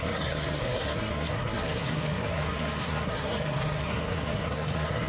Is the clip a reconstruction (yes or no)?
yes